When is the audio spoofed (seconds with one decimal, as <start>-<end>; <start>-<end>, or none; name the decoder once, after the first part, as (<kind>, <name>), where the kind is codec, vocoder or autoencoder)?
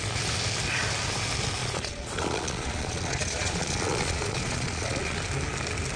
1.6-5.2 (vocoder, Vocos)